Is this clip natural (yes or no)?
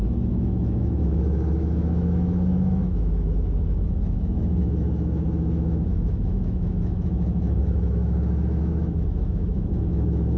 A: no